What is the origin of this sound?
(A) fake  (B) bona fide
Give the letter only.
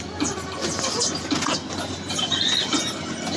B